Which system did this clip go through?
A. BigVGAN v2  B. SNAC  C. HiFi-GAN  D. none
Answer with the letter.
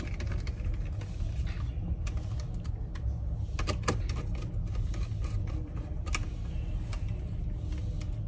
D